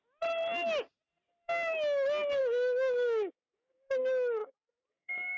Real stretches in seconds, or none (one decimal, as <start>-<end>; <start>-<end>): 0.0-2.4; 4.0-4.4